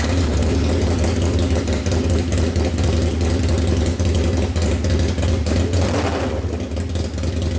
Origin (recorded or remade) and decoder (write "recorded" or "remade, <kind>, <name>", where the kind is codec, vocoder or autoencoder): recorded